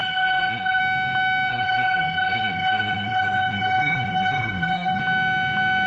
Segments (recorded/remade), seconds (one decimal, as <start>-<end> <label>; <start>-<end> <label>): 0.0-0.8 remade; 0.8-1.5 recorded; 1.5-5.0 remade; 5.0-5.9 recorded